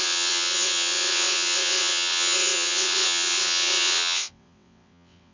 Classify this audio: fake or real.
fake